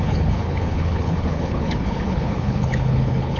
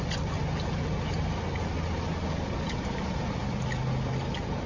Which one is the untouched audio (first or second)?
second